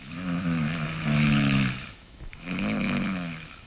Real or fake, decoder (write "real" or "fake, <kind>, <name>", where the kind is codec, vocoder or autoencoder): fake, autoencoder, DAC-VAE